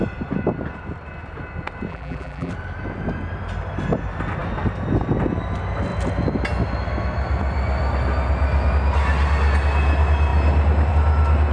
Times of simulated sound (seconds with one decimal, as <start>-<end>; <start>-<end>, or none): 1.9-2.5